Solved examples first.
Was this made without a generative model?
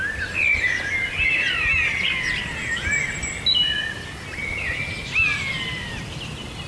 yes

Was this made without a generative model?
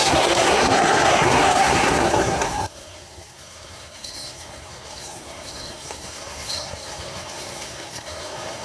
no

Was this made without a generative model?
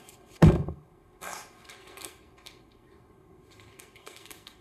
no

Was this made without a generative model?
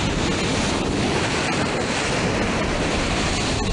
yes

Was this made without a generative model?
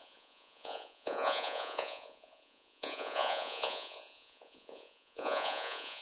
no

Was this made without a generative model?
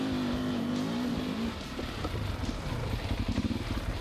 yes